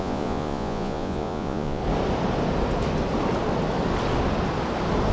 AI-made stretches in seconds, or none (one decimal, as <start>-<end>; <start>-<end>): 0.0-1.8